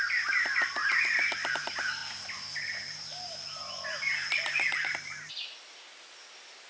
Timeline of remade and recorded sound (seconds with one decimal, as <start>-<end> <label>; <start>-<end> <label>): 0.0-6.7 recorded